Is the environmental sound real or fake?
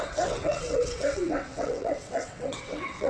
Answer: fake